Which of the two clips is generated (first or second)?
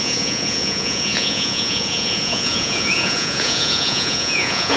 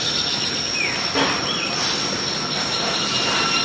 first